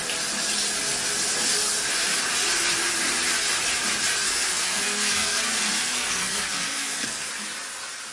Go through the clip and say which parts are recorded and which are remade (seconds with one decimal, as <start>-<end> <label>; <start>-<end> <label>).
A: 0.0-4.2 recorded; 4.2-7.3 remade; 7.3-8.1 recorded